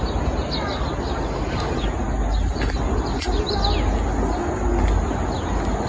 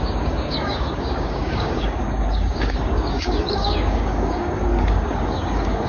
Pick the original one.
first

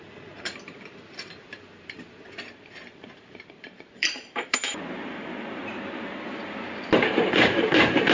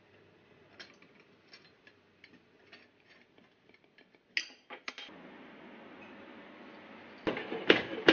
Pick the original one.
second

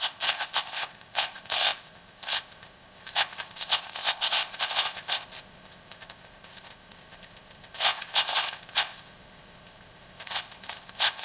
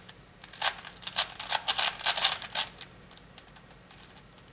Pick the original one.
second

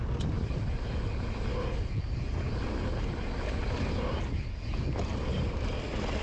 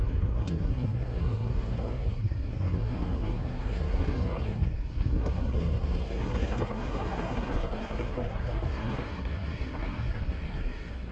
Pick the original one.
first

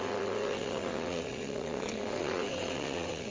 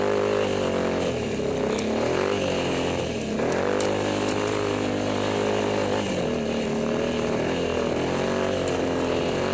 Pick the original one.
second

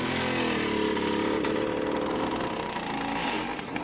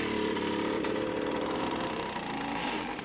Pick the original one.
first